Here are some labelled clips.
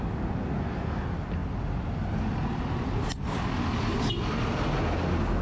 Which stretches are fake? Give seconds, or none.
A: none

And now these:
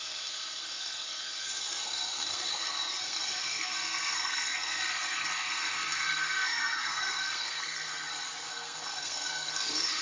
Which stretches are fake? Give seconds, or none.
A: 0.0-7.9 (codec, SNAC); 8.5-10.0

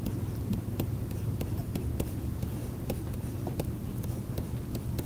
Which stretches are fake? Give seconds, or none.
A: 0.0-3.9 (vocoder, BigVGAN v2)

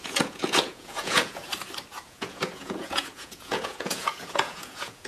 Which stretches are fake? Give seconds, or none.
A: 0.0-1.4 (vocoder, Vocos); 1.9-5.1

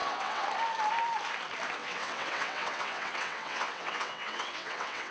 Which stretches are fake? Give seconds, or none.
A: 0.0-0.5 (vocoder, WaveNeXt); 1.8-5.1